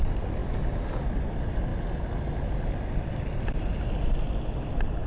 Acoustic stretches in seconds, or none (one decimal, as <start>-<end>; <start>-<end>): 0.0-5.1